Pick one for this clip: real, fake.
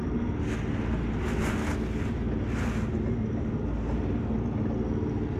real